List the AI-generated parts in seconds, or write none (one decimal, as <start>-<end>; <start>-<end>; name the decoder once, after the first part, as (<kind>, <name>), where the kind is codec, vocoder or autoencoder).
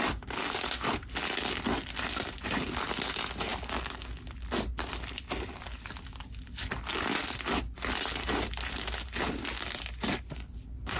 none